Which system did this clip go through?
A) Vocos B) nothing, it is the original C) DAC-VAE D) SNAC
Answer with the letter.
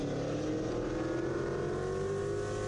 B